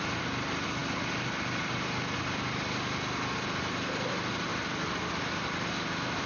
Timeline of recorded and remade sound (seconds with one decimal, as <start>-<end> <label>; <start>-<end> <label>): 0.0-0.8 remade; 0.8-4.1 recorded; 4.1-4.5 remade; 4.5-5.1 recorded; 5.1-6.3 remade